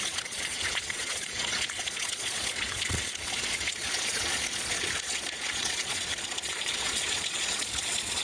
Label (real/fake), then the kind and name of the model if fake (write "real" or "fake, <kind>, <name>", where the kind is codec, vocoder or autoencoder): fake, vocoder, Vocos